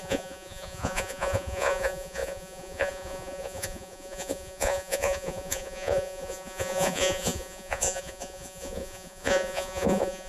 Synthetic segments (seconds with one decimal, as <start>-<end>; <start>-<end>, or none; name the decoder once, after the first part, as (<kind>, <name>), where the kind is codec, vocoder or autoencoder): 0.0-10.3 (vocoder, Vocos)